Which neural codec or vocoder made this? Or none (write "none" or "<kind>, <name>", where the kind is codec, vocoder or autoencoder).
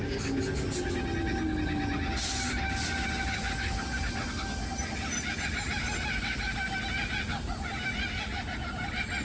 none